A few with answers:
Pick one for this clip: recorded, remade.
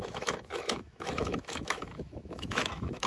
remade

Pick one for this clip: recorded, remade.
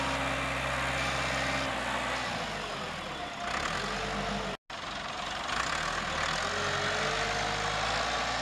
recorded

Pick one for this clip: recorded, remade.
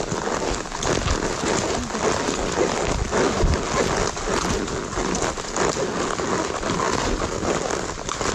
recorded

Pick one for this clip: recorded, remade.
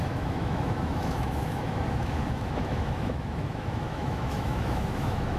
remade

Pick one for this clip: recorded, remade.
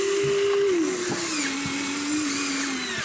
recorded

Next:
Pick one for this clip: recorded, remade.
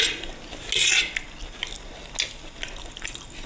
recorded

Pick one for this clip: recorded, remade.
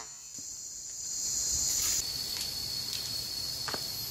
recorded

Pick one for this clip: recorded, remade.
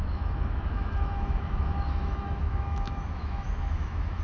remade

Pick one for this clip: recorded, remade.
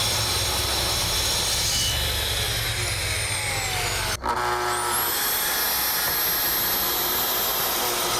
recorded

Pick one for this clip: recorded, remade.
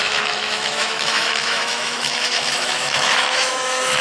remade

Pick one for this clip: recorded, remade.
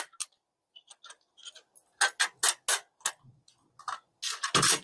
recorded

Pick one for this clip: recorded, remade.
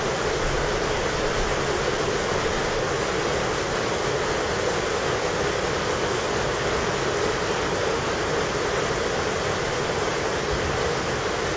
recorded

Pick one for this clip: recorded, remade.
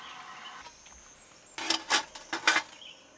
recorded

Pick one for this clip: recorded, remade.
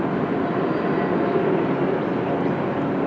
recorded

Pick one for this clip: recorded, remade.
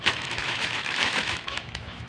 remade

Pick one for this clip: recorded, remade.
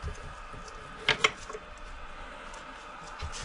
recorded